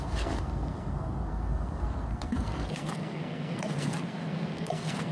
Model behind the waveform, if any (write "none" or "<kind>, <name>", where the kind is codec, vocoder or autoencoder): codec, SNAC